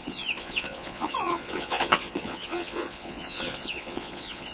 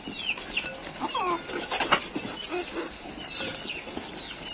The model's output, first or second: first